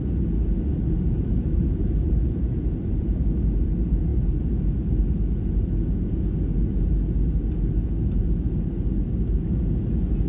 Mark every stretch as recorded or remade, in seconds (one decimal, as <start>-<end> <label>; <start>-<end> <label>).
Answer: 0.0-0.7 recorded; 0.7-3.2 remade; 3.2-10.3 recorded

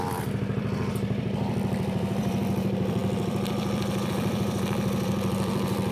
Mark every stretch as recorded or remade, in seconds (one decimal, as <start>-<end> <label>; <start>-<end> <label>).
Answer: 0.0-5.9 remade

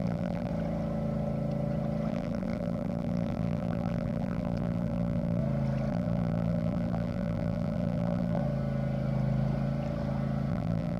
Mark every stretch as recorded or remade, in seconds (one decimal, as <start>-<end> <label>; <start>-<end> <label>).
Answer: 0.0-0.5 remade; 0.5-2.1 recorded; 2.1-5.4 remade; 5.4-5.9 recorded; 5.9-8.4 remade; 8.4-10.5 recorded; 10.5-11.0 remade

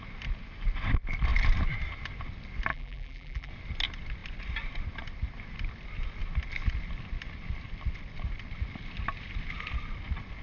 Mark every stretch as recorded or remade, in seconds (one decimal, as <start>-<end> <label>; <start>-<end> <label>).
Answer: 0.0-2.7 recorded; 2.7-3.5 remade; 3.5-10.4 recorded

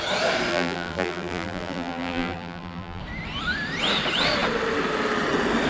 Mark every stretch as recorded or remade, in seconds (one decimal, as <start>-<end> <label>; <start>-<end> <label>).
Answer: 0.0-0.5 recorded; 0.5-3.0 remade; 3.0-5.7 recorded

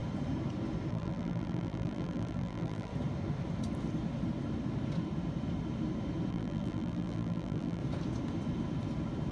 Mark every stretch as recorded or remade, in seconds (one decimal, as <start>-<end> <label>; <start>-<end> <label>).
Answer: 0.0-0.9 recorded; 0.9-2.9 remade; 2.9-6.3 recorded; 6.3-7.8 remade; 7.8-9.3 recorded

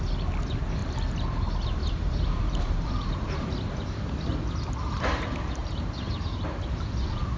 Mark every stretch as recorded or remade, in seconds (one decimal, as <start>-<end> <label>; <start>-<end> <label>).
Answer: 0.0-1.8 recorded; 1.8-3.6 remade; 3.6-5.6 recorded; 5.6-6.8 remade; 6.8-7.4 recorded